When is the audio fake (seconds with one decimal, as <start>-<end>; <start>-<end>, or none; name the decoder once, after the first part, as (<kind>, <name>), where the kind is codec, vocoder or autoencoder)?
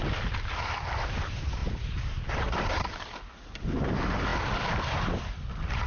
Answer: none